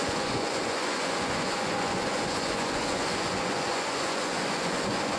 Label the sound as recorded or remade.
remade